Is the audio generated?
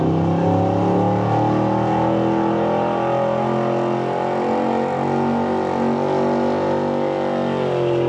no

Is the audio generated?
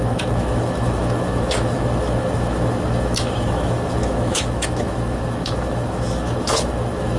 yes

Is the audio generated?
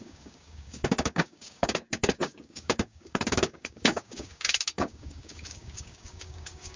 yes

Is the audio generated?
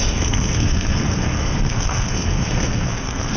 yes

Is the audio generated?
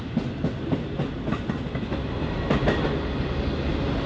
no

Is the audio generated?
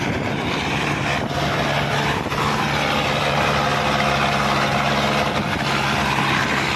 no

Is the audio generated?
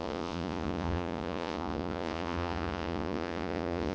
yes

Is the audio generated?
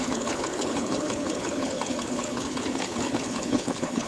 yes